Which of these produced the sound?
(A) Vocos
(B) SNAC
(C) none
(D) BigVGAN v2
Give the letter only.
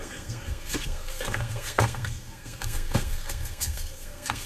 B